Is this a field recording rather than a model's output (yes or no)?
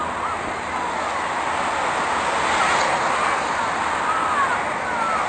yes